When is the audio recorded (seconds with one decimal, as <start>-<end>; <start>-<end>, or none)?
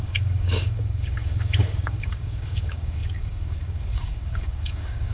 none